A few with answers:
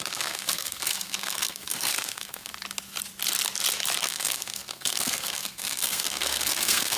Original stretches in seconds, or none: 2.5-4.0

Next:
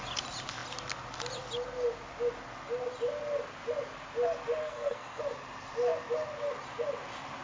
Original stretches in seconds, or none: 0.0-4.6; 5.2-7.4

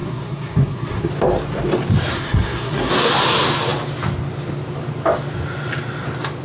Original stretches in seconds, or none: 1.1-2.1; 2.9-6.4

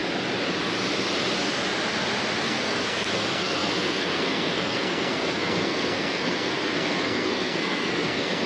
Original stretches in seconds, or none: 0.0-2.4

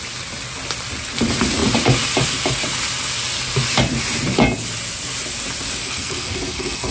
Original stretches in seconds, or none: 0.0-5.8

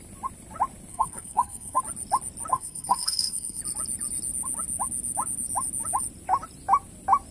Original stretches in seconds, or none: 0.0-0.9; 1.8-2.5; 3.6-7.3

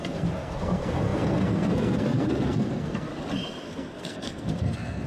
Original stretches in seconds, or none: 3.1-3.6